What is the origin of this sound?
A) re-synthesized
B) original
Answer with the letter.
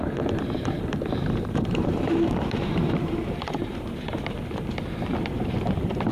A